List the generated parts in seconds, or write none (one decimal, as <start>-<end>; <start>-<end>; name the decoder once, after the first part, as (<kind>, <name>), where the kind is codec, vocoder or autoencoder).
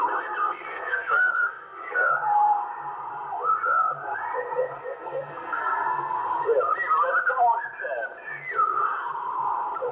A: 0.7-2.1 (codec, SNAC); 4.8-6.2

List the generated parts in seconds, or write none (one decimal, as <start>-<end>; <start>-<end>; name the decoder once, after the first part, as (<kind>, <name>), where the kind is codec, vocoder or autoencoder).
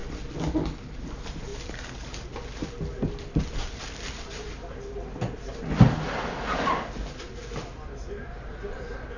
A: 1.5-3.8 (vocoder, BigVGAN v2)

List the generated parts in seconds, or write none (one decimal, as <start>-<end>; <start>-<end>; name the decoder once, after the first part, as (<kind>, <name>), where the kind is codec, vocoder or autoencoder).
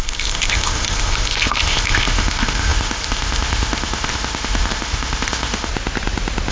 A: 0.0-5.7 (codec, ZipCodec)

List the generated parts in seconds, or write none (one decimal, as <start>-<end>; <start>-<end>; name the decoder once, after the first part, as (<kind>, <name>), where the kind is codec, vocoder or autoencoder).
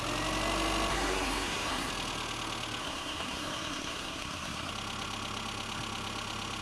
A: 0.9-1.9 (codec, SNAC); 2.8-4.7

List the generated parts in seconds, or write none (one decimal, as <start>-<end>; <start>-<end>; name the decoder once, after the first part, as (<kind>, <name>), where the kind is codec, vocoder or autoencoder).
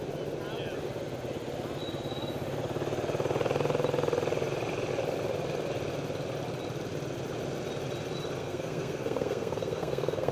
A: 8.4-10.3 (codec, SNAC)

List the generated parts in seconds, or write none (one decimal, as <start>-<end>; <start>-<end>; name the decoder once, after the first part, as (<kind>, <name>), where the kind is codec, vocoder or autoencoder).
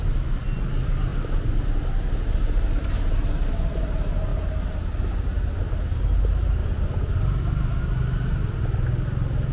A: none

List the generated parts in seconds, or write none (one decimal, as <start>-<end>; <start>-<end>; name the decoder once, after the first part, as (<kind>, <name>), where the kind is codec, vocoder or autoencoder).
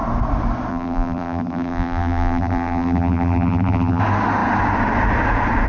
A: 0.7-4.0 (vocoder, BigVGAN v2)